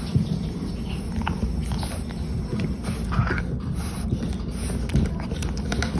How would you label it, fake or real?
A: real